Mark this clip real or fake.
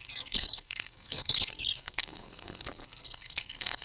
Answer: fake